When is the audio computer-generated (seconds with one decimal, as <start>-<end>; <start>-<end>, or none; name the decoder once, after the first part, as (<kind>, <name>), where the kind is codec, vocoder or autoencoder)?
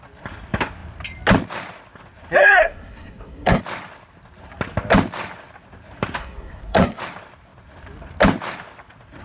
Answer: 2.4-3.6 (codec, SNAC); 6.2-7.0